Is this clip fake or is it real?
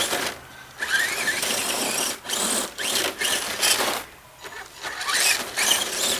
real